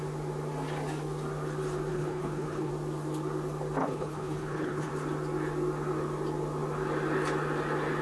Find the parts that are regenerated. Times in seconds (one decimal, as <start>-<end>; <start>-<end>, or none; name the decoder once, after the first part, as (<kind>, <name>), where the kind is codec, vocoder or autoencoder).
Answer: 1.9-2.7 (codec, HILCodec); 3.8-4.9